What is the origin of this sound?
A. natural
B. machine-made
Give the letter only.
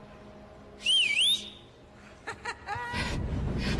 A